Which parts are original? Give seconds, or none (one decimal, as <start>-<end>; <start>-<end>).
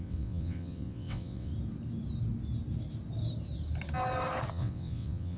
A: 1.5-4.5